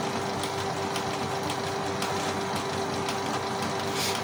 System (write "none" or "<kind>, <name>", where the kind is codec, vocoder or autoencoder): none